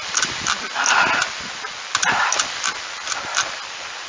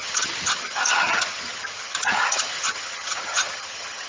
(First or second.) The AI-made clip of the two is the second